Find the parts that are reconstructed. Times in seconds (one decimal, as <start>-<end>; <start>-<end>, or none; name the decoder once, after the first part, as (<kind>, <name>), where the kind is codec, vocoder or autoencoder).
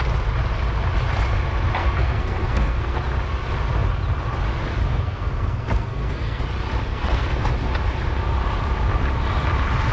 1.8-3.0 (codec, SNAC); 4.9-6.4; 6.9-7.5